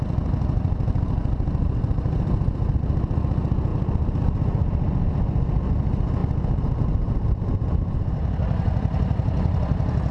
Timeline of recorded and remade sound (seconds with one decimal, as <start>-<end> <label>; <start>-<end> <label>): 0.0-6.2 remade; 6.2-6.8 recorded; 6.8-10.1 remade